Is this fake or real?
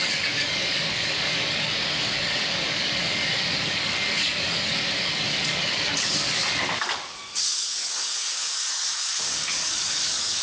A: fake